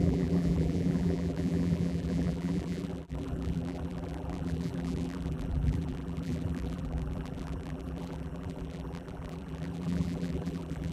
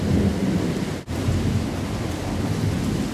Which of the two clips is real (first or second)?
second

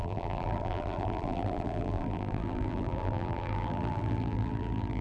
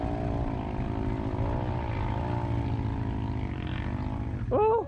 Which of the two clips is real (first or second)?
second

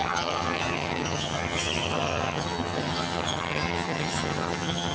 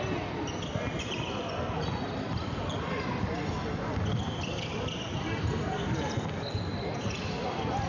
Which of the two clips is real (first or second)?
second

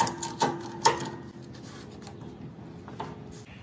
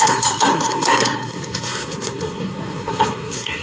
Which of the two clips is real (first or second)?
first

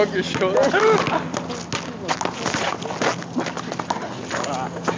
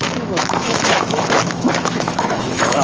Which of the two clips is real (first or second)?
first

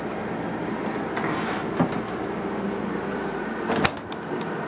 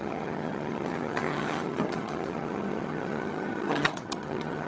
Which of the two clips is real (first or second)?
first